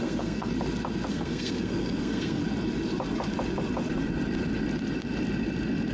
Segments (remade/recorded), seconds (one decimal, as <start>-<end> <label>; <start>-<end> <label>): 0.0-0.5 remade; 0.5-1.1 recorded; 1.1-2.4 remade; 2.4-5.9 recorded